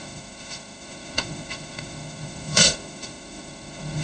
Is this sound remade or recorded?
remade